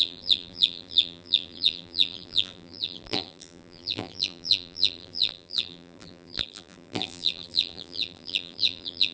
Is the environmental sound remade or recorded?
remade